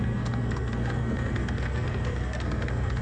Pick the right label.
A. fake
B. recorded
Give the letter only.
A